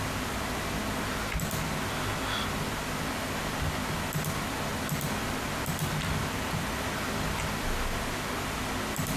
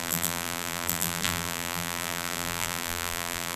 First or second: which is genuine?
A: first